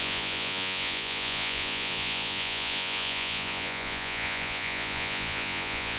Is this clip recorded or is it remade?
remade